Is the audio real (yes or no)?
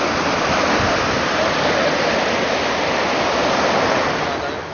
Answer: yes